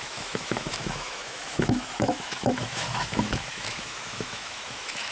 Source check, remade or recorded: remade